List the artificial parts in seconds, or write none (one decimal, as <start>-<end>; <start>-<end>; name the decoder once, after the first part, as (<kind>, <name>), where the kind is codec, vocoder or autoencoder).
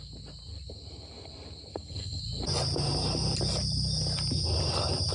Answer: 1.7-2.2 (codec, SNAC)